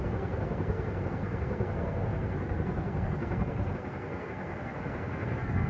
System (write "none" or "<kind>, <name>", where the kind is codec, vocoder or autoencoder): codec, SNAC